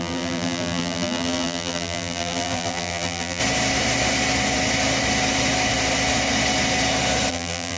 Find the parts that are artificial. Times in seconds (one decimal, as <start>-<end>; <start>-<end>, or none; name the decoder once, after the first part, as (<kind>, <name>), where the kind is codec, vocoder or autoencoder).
0.0-3.4 (vocoder, BigVGAN v2); 7.3-7.8